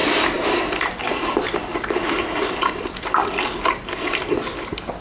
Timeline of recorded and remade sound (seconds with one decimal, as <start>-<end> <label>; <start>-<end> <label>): 0.0-5.0 recorded